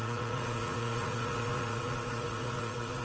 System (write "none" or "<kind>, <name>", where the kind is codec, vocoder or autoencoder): vocoder, Vocos